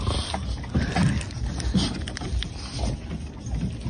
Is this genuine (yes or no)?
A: yes